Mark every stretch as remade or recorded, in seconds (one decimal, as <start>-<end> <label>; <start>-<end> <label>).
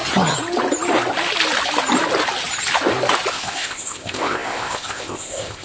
0.0-3.3 recorded; 3.3-5.6 remade